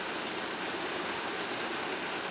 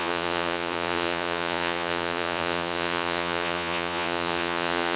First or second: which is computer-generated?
second